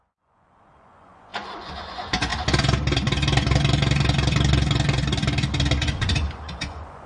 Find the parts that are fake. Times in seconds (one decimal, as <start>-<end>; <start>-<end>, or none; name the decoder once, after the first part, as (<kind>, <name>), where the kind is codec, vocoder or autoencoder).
0.0-2.3 (vocoder, Vocos); 5.8-7.1